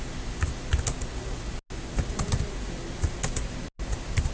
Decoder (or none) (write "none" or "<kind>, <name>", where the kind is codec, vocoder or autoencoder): none